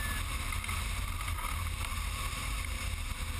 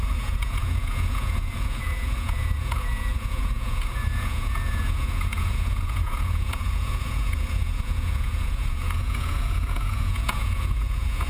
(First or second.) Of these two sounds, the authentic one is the first